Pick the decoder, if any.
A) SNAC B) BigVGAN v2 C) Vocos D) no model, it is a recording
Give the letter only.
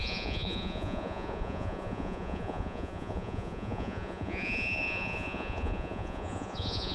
C